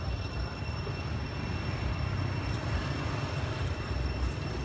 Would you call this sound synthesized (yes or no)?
no